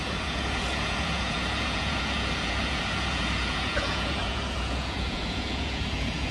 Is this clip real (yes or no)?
no